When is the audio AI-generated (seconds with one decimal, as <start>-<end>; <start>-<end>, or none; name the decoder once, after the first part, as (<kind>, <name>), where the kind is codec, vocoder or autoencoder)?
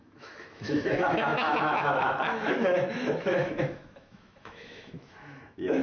0.0-5.8 (autoencoder, DAC-VAE)